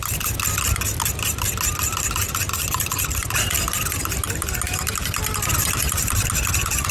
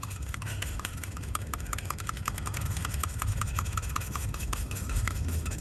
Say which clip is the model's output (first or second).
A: second